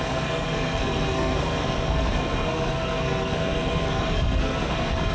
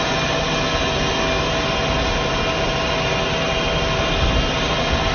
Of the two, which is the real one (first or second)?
second